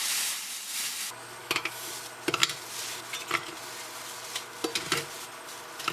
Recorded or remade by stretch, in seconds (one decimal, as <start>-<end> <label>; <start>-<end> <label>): 0.0-1.4 recorded; 1.4-1.9 remade; 1.9-5.9 recorded